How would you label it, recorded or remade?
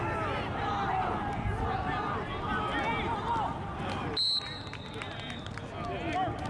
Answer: recorded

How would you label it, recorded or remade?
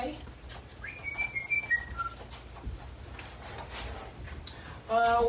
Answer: recorded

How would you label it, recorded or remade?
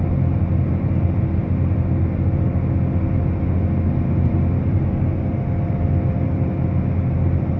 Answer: recorded